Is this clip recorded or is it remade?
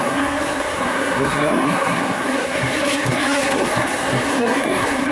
remade